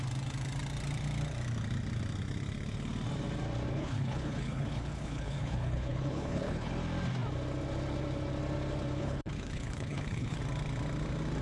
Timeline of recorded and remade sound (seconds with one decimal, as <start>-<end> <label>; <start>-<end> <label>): 0.0-3.7 recorded; 3.7-6.7 remade; 6.7-9.0 recorded; 9.0-10.4 remade; 10.4-11.4 recorded